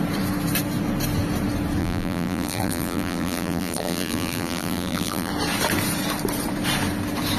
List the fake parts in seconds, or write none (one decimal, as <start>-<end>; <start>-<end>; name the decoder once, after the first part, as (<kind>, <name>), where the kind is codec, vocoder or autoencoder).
1.8-5.3 (vocoder, BigVGAN v2)